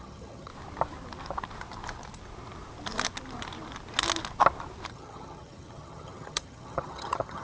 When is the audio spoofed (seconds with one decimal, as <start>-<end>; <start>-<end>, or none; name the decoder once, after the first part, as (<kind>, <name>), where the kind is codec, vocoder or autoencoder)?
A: 0.0-0.5 (vocoder, HiFi-GAN); 4.9-7.4